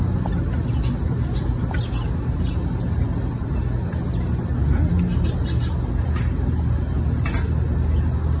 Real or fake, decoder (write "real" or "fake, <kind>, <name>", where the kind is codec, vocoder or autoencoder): real